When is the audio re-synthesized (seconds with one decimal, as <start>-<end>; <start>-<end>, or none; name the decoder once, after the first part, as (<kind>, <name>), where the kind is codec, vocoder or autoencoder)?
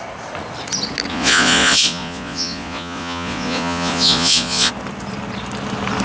1.1-4.7 (vocoder, Vocos)